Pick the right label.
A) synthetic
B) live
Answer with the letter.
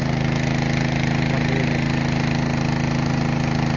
B